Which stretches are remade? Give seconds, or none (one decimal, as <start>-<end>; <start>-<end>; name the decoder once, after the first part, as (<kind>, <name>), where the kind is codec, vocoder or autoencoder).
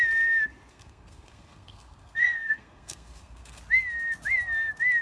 0.7-3.6 (codec, SNAC)